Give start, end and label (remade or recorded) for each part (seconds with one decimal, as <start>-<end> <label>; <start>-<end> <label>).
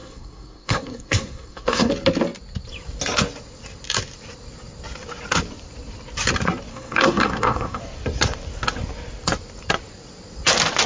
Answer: 0.0-1.9 remade; 1.9-6.7 recorded; 6.7-7.8 remade; 7.8-10.9 recorded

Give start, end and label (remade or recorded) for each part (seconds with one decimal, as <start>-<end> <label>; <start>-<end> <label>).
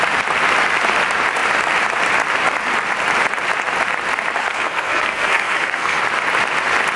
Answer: 0.0-4.4 recorded; 4.4-6.0 remade; 6.0-7.0 recorded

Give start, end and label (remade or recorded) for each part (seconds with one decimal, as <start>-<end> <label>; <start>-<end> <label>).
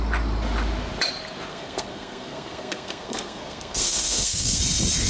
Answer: 0.0-1.5 recorded; 1.5-4.6 remade; 4.6-5.1 recorded